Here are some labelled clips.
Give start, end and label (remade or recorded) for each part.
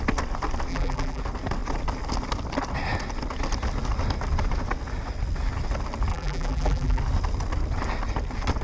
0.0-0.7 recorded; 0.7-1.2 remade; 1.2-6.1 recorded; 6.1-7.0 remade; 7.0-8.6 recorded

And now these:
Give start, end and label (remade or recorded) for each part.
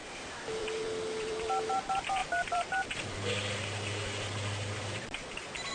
0.0-0.6 recorded; 0.6-5.7 remade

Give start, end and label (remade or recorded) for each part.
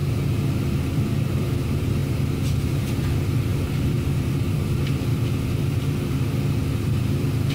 0.0-0.6 recorded; 0.6-2.0 remade; 2.0-2.7 recorded; 2.7-7.5 remade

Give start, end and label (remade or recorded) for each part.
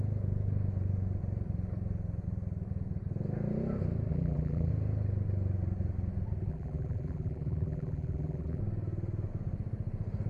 0.0-4.1 recorded; 4.1-4.7 remade; 4.7-6.5 recorded; 6.5-8.6 remade; 8.6-10.3 recorded